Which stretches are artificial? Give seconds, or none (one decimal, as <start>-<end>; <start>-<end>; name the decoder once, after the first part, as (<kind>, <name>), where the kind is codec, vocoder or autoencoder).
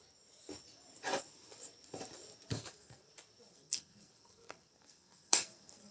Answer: 2.5-3.1 (codec, SNAC); 3.5-5.9